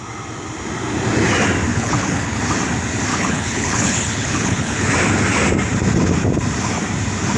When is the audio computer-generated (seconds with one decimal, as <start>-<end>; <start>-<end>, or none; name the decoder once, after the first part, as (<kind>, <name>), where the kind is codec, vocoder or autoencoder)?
1.7-2.4 (codec, HILCodec); 3.1-4.9